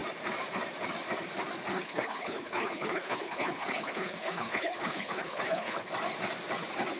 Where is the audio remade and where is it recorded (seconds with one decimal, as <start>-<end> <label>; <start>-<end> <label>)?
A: 0.0-1.7 recorded; 1.7-5.9 remade; 5.9-7.0 recorded

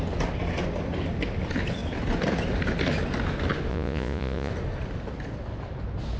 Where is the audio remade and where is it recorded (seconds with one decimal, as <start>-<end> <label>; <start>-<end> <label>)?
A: 0.0-3.7 recorded; 3.7-4.5 remade; 4.5-6.2 recorded

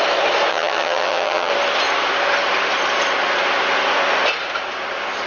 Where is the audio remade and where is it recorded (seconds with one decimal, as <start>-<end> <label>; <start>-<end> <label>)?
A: 0.0-0.5 recorded; 0.5-1.5 remade; 1.5-5.3 recorded

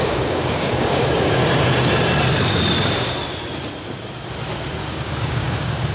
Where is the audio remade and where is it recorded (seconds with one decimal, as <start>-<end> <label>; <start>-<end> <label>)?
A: 0.0-1.4 remade; 1.4-4.9 recorded; 4.9-5.9 remade

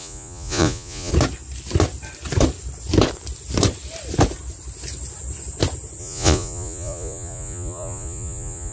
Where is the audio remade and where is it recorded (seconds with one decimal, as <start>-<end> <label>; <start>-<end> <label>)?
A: 0.0-1.1 remade; 1.1-6.0 recorded; 6.0-8.7 remade

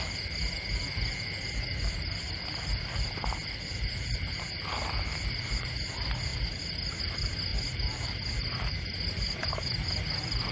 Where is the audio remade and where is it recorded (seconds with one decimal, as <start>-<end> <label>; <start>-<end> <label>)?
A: 0.0-10.5 recorded

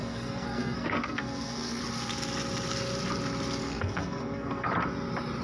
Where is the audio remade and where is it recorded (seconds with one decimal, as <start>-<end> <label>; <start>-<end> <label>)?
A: 0.0-1.8 remade; 1.8-3.6 recorded; 3.6-4.7 remade; 4.7-5.4 recorded